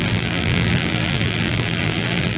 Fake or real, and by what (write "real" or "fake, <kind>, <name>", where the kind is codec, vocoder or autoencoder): fake, vocoder, BigVGAN v2